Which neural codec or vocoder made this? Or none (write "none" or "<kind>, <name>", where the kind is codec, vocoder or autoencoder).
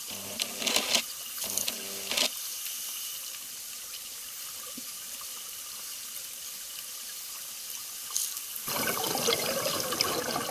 none